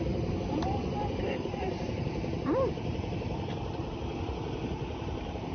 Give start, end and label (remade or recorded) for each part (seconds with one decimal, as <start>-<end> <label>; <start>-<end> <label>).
0.0-3.8 remade; 3.8-4.9 recorded; 4.9-5.5 remade